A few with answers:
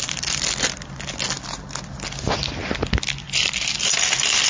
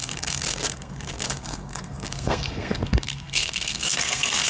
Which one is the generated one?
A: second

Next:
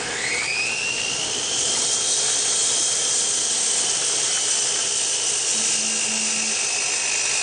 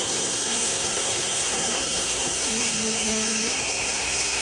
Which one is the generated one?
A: second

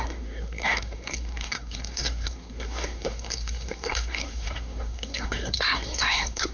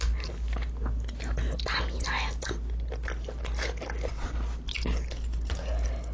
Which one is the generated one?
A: first